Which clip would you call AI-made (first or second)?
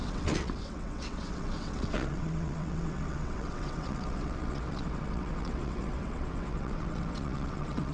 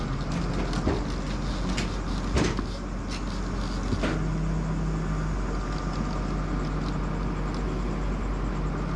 first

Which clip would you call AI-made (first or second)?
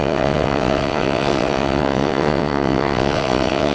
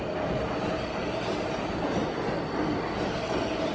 first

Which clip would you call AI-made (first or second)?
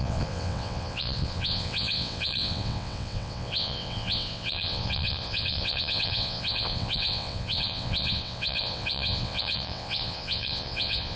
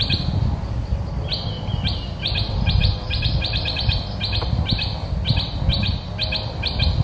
first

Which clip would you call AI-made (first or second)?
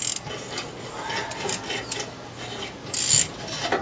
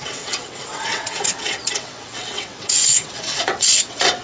second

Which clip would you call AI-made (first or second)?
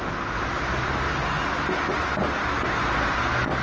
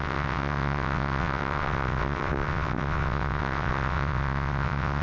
second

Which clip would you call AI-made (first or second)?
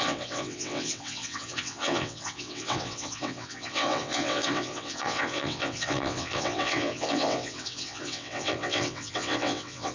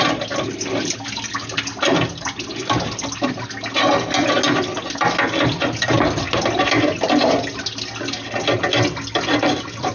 first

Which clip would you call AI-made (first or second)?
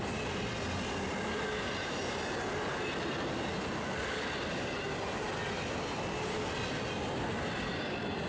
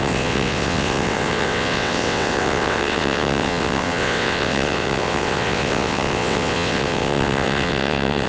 second